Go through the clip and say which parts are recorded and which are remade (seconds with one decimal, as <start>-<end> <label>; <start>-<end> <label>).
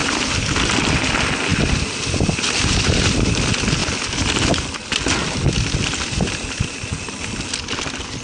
0.0-8.2 recorded